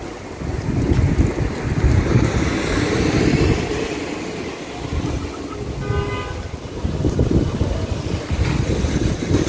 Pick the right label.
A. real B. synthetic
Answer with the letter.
A